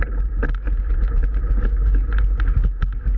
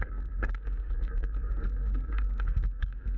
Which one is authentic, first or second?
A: first